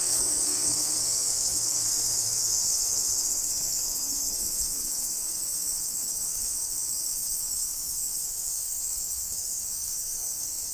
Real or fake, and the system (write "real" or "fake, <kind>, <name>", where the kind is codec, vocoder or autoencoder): fake, codec, SNAC